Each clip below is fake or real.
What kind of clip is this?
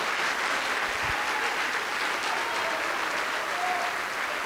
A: real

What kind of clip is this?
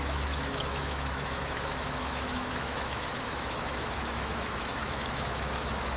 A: fake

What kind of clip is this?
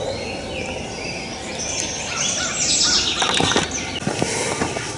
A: real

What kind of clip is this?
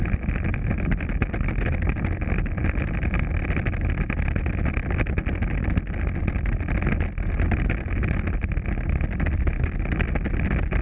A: real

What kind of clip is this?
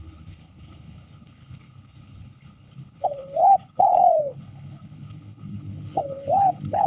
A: fake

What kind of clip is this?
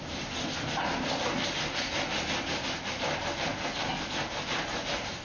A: real